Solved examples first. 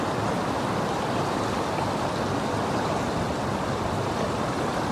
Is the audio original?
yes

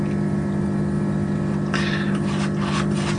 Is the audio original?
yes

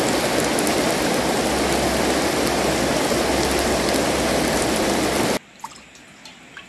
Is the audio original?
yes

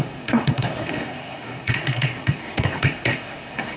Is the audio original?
no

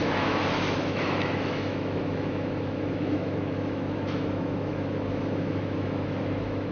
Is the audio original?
no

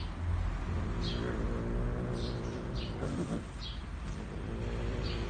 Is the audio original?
yes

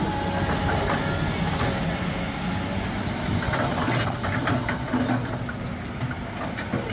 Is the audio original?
yes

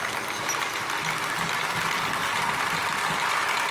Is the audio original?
yes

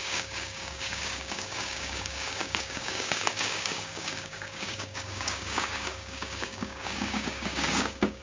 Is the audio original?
no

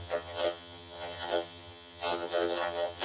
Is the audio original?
no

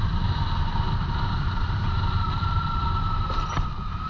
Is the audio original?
yes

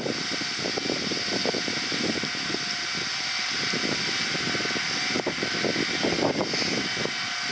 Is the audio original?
yes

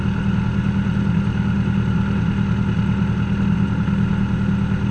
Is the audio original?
yes